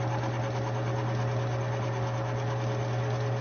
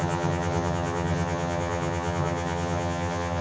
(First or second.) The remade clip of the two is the second